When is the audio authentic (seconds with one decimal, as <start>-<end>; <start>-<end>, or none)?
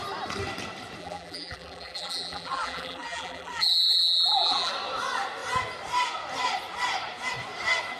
0.0-1.0; 4.7-8.0